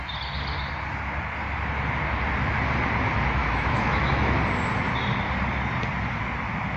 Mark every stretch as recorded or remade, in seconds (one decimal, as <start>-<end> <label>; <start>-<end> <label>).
0.0-3.4 recorded; 3.4-4.3 remade; 4.3-6.8 recorded